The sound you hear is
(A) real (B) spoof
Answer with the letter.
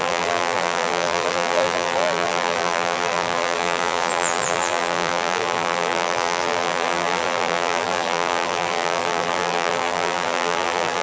B